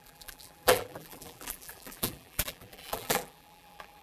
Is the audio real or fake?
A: fake